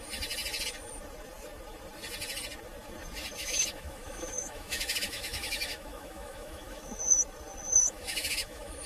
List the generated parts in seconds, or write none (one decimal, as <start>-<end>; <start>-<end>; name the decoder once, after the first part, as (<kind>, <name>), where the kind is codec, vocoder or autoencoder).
3.4-7.0 (autoencoder, DAC-VAE); 7.8-8.9